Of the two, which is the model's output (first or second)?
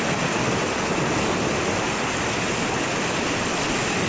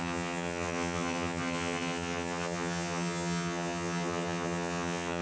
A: second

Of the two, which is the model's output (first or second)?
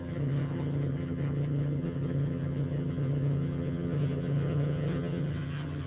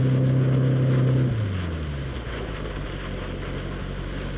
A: first